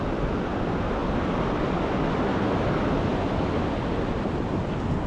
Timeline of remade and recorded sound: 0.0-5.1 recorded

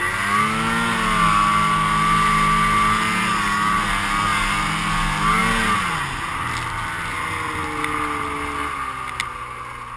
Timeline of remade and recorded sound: 0.0-10.0 recorded

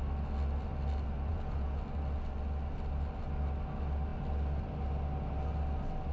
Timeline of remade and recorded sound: 0.0-1.3 recorded; 1.3-1.8 remade; 1.8-6.1 recorded

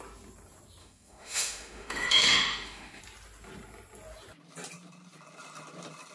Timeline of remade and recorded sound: 0.0-0.8 recorded; 0.8-3.0 remade; 3.0-6.1 recorded

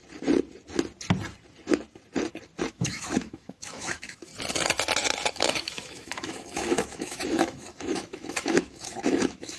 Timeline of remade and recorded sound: 0.0-2.7 recorded; 2.7-4.3 remade; 4.3-5.3 recorded; 5.3-9.6 remade

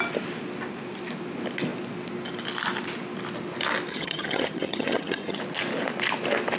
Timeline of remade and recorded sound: 0.0-3.9 recorded; 3.9-5.4 remade; 5.4-6.6 recorded

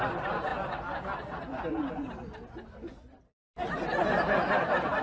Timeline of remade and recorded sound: 0.0-5.0 recorded

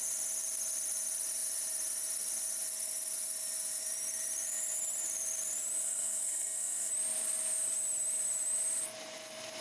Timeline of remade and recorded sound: 0.0-5.8 recorded; 5.8-6.9 remade; 6.9-9.6 recorded